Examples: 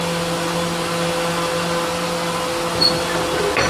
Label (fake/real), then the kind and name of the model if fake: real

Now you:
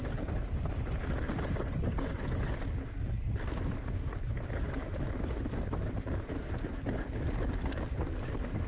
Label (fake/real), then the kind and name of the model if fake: real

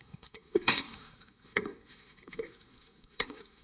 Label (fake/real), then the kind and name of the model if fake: fake, codec, SNAC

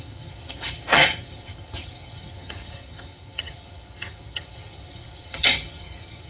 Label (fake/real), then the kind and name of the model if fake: fake, vocoder, HiFi-GAN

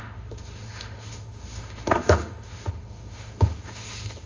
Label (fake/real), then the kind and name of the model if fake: fake, autoencoder, DAC-VAE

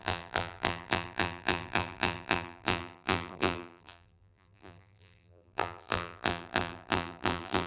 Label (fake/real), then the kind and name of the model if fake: fake, vocoder, BigVGAN v2